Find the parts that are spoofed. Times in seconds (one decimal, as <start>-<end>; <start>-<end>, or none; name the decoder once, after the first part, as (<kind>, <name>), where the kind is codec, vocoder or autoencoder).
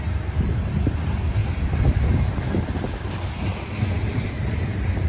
0.0-1.4 (vocoder, BigVGAN v2); 2.1-3.5; 4.0-5.1